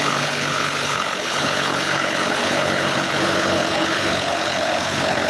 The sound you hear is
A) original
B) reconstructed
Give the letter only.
B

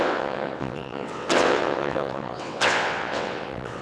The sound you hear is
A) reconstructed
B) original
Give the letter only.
A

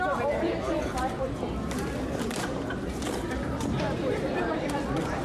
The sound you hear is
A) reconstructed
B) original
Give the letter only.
A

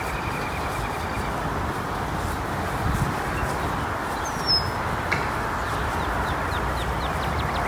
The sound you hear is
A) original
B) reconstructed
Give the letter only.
A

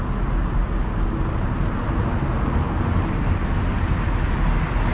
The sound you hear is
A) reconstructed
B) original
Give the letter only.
B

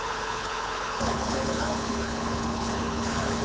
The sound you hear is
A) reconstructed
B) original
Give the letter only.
A